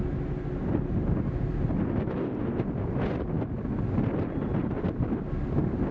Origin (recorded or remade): recorded